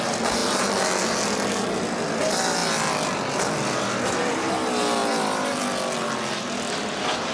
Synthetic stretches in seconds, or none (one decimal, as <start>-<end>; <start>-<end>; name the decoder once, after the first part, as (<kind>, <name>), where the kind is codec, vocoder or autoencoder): 2.6-4.5 (vocoder, BigVGAN v2); 5.0-5.6